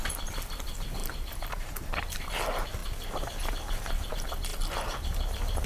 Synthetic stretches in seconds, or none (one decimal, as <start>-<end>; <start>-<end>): 1.0-2.3